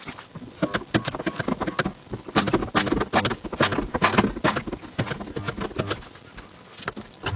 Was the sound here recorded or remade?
recorded